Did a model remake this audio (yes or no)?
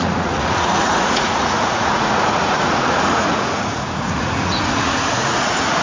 yes